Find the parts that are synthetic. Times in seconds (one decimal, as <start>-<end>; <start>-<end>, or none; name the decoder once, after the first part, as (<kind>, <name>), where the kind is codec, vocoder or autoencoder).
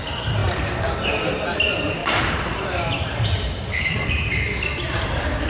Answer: 0.4-1.1 (vocoder, BigVGAN v2); 2.0-4.2